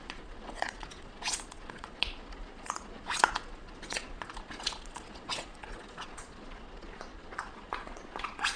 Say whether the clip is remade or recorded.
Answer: remade